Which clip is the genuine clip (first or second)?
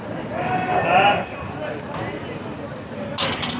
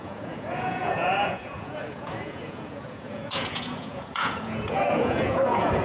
first